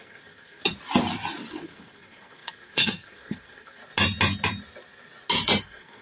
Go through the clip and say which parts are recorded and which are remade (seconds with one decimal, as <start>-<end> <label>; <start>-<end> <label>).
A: 0.0-0.6 remade; 0.6-1.5 recorded; 1.5-3.8 remade; 3.8-5.6 recorded; 5.6-6.0 remade